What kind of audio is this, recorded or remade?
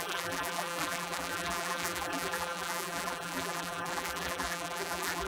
remade